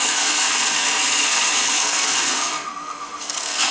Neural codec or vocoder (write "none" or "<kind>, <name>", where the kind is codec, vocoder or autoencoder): codec, SNAC